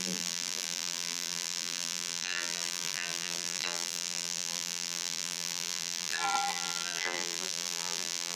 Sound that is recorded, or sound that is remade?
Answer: remade